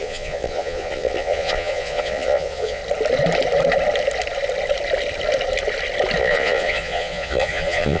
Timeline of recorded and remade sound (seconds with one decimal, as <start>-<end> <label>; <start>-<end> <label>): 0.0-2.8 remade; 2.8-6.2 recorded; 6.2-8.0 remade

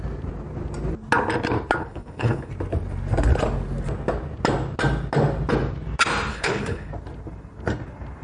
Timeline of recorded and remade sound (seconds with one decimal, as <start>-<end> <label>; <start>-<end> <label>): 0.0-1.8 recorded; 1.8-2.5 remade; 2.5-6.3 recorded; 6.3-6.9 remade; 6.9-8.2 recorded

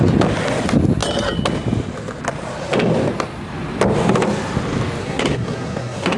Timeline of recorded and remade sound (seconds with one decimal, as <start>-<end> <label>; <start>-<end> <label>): 0.0-5.0 recorded; 5.0-6.2 remade

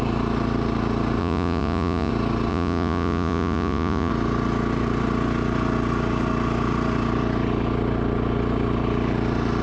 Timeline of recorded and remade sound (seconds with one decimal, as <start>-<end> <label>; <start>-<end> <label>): 0.0-1.2 recorded; 1.2-2.1 remade; 2.1-2.5 recorded; 2.5-4.1 remade; 4.1-9.6 recorded

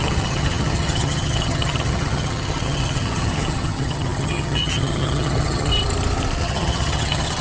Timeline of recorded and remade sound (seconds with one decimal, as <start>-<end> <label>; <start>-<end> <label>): 0.0-5.7 remade; 5.7-6.4 recorded; 6.4-7.4 remade

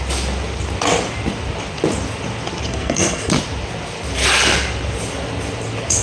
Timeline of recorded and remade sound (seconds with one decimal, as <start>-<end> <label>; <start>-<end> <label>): 0.0-2.7 recorded; 2.7-3.3 remade; 3.3-6.0 recorded

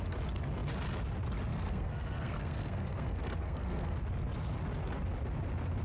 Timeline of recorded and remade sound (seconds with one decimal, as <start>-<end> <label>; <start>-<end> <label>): 0.0-1.5 recorded; 1.5-4.0 remade; 4.0-5.8 recorded

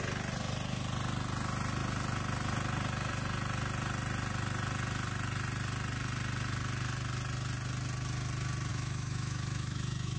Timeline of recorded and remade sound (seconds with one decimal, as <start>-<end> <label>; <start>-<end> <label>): 0.0-8.7 recorded; 8.7-10.2 remade